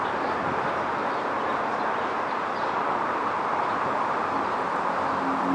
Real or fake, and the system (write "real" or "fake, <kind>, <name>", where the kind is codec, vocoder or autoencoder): fake, vocoder, BigVGAN v2